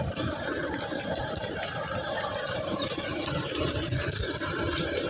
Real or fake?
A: fake